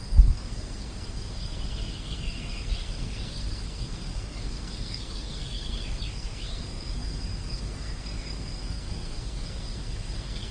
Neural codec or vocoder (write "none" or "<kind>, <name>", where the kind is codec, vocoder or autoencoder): codec, SNAC